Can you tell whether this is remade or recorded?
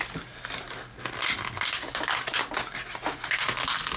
recorded